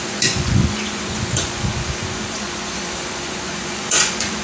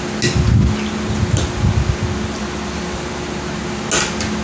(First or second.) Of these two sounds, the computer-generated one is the first